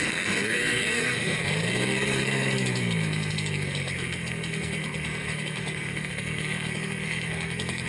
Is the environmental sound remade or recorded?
remade